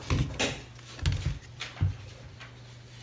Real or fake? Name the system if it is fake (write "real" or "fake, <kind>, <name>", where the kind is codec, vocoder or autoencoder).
real